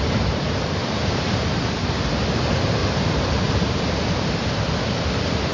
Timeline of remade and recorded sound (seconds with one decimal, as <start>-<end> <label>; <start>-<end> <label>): 0.0-0.8 recorded; 0.8-1.5 remade; 1.5-2.8 recorded; 2.8-4.5 remade; 4.5-5.5 recorded